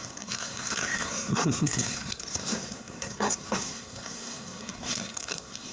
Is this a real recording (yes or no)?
no